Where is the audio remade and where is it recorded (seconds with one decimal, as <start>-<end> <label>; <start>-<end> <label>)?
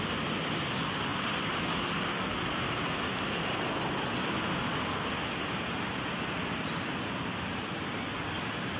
0.0-1.1 recorded; 1.1-1.6 remade; 1.6-8.8 recorded